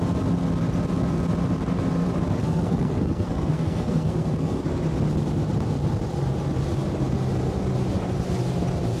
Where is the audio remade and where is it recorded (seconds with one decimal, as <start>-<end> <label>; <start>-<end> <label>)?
0.0-2.4 recorded; 2.4-4.6 remade; 4.6-9.0 recorded